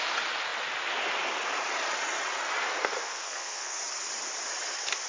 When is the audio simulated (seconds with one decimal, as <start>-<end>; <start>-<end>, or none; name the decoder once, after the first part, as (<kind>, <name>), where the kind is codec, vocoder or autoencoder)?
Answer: 2.8-3.8 (codec, SNAC)